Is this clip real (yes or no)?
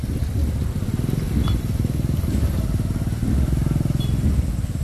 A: yes